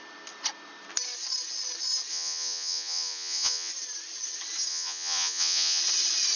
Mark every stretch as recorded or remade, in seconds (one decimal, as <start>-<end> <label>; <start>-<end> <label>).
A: 0.0-2.1 recorded; 2.1-3.7 remade; 3.7-4.7 recorded; 4.7-5.8 remade; 5.8-6.4 recorded